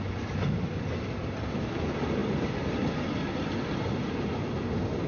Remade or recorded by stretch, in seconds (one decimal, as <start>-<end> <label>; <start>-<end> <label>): 0.0-5.1 recorded